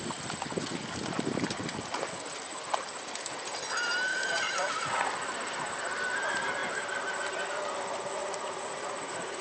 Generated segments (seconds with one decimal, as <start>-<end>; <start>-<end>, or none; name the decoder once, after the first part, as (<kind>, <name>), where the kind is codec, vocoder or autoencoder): 4.1-5.1 (vocoder, Vocos); 8.2-9.4